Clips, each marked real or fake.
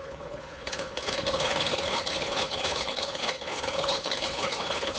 fake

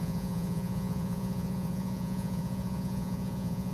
fake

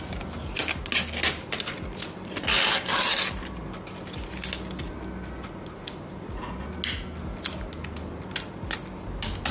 real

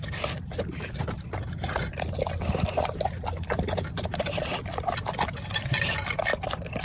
real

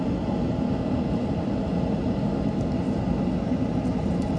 real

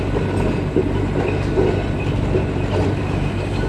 real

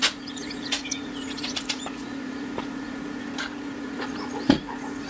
fake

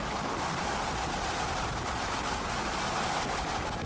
real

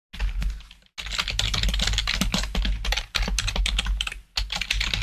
real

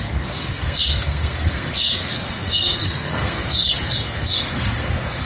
fake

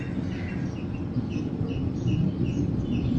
real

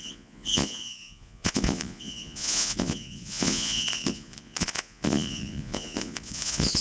fake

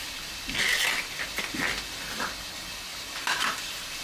real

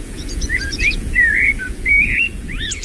fake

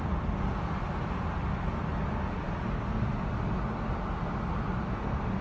real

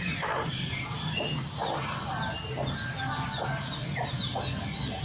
real